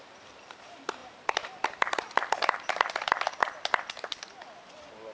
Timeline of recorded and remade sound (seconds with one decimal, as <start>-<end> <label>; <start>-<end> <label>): 0.0-5.1 remade